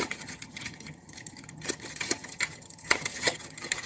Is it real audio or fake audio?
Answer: fake